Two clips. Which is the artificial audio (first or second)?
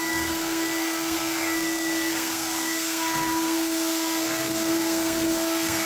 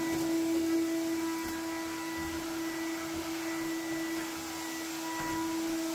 first